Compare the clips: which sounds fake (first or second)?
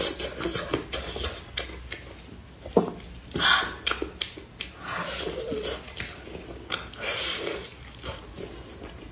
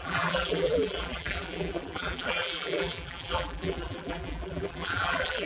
second